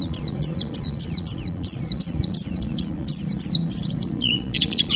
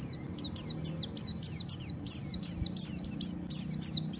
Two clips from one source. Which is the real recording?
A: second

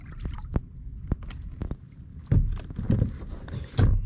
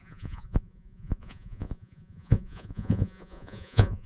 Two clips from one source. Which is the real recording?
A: first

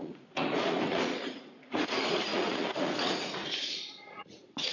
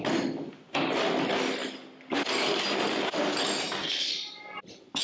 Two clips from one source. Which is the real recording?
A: second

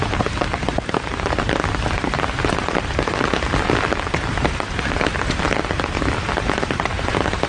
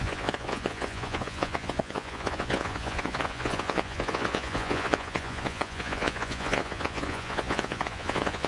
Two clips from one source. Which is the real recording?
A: first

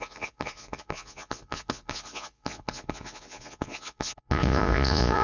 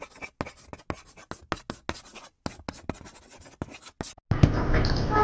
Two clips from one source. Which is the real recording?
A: second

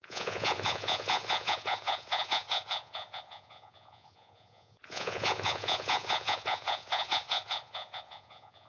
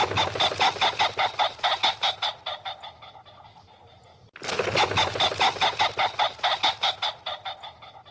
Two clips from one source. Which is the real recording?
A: second